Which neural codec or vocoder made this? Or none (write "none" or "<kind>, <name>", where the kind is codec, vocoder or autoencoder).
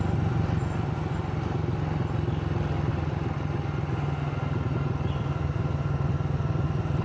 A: none